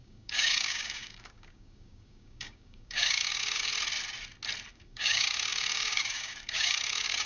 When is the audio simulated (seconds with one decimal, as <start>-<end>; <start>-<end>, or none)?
0.0-3.7; 4.7-7.3